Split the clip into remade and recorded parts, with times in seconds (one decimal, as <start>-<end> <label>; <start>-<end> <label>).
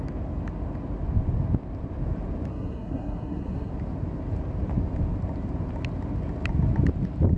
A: 0.0-2.5 recorded; 2.5-3.7 remade; 3.7-7.4 recorded